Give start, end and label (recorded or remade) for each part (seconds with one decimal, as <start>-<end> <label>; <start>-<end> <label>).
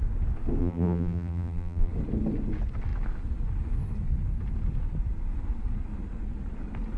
0.0-0.6 recorded; 0.6-1.9 remade; 1.9-7.0 recorded